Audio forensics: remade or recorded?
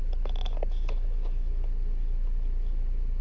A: recorded